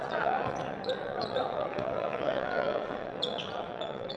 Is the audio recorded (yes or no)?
no